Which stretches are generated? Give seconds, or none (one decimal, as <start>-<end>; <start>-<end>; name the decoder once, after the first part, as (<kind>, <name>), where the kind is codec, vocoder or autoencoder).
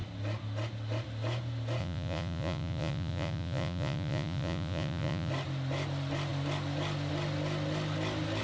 1.8-5.3 (vocoder, Vocos)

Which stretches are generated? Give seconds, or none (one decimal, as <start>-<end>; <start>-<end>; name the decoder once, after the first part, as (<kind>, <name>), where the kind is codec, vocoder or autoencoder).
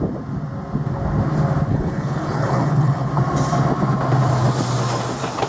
1.7-3.1 (codec, HILCodec)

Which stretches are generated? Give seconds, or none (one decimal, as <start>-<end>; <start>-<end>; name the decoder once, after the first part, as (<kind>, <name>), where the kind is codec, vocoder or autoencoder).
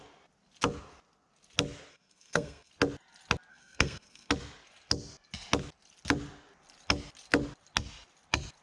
1.9-2.7 (codec, SNAC); 3.5-4.3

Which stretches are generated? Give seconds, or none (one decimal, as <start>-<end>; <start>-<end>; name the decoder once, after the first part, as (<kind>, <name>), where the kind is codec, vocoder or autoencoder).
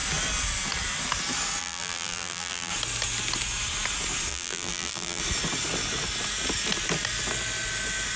1.6-2.7 (vocoder, BigVGAN v2); 4.3-5.2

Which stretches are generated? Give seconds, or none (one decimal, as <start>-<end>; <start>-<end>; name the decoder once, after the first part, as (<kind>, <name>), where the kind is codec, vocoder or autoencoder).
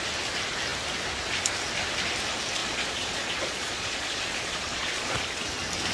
2.6-5.2 (vocoder, Vocos)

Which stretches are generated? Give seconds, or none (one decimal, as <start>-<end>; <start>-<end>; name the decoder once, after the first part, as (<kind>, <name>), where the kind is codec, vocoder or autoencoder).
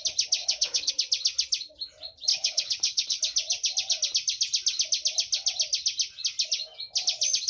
0.4-0.9 (codec, HILCodec); 2.3-3.2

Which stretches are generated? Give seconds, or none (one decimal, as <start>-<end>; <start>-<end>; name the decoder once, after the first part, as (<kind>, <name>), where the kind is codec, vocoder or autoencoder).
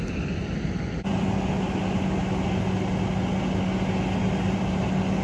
0.4-1.1 (vocoder, BigVGAN v2)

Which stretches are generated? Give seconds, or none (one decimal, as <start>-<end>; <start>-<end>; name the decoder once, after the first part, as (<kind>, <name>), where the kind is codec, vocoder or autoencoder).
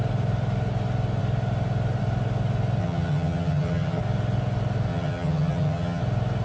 2.8-4.0 (vocoder, HiFi-GAN); 4.9-6.0